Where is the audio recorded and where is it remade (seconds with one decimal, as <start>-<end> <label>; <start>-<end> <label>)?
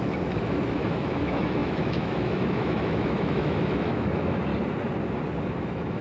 0.0-4.5 remade; 4.5-5.6 recorded; 5.6-6.0 remade